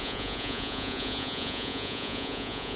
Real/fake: fake